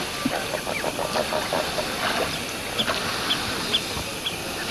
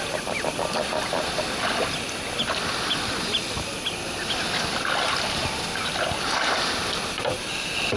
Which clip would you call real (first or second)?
first